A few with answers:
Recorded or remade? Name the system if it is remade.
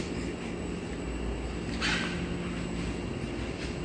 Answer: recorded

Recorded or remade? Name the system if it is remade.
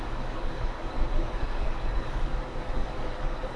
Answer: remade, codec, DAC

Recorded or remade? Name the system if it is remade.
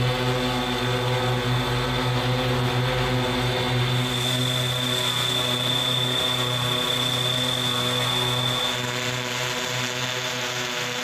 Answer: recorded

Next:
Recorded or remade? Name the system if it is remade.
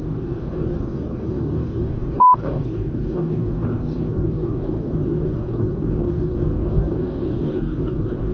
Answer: remade, codec, DAC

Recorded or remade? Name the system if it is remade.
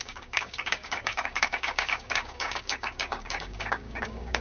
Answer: remade, codec, DAC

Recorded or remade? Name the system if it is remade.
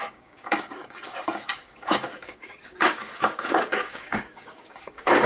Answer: remade, codec, DAC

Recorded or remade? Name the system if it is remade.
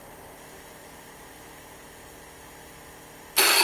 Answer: recorded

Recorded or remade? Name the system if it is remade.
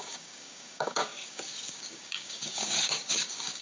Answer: remade, codec, DAC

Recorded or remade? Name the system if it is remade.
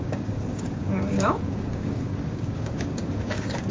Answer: remade, codec, DAC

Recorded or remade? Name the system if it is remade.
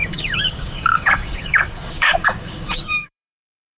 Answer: remade, codec, DAC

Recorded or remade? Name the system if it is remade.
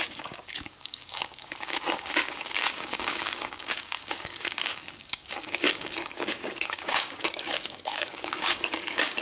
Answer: remade, codec, DAC